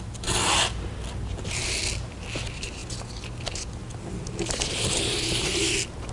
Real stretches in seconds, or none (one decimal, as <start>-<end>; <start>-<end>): 0.0-6.1